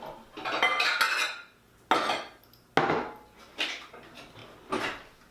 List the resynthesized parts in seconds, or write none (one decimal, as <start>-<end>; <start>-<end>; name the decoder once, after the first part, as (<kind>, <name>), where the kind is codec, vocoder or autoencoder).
none